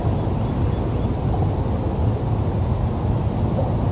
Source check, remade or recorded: recorded